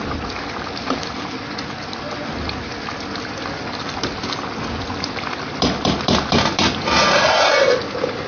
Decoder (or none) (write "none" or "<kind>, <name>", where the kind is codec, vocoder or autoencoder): none